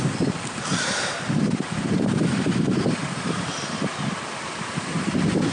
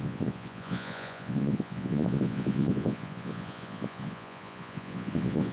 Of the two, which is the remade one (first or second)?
second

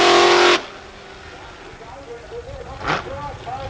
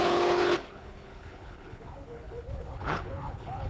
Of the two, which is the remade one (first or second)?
second